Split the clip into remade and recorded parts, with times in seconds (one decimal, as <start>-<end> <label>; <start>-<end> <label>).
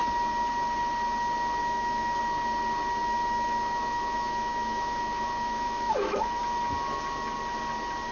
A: 0.0-1.6 recorded; 1.6-2.2 remade; 2.2-3.0 recorded; 3.0-6.4 remade; 6.4-8.1 recorded